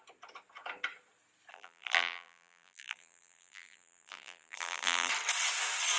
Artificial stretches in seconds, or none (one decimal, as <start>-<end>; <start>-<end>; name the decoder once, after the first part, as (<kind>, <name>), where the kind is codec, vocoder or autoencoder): 1.5-5.1 (vocoder, BigVGAN v2)